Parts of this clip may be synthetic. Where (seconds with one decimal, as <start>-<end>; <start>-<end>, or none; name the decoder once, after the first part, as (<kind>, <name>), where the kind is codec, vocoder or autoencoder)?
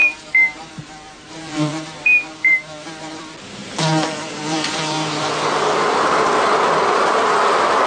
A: 0.0-3.2 (vocoder, BigVGAN v2); 3.6-5.3